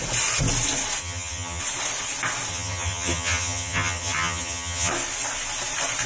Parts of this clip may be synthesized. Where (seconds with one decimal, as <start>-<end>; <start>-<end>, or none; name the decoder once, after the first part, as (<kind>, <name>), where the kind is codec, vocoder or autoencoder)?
1.0-1.6 (vocoder, HiFi-GAN); 2.5-4.9